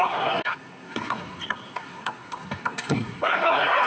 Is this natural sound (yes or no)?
no